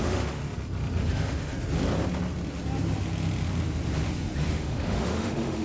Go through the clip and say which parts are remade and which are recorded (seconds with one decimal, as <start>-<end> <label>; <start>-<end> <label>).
0.0-0.4 remade; 0.4-1.1 recorded; 1.1-1.5 remade; 1.5-4.5 recorded; 4.5-5.6 remade